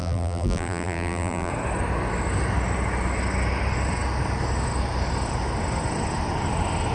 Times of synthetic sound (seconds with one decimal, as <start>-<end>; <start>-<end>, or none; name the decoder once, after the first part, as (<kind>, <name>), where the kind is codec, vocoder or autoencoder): 0.0-1.5 (vocoder, BigVGAN v2)